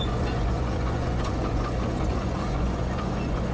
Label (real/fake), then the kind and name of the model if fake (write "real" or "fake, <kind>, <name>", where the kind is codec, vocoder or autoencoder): fake, vocoder, Vocos